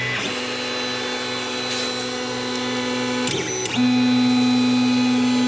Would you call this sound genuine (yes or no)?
yes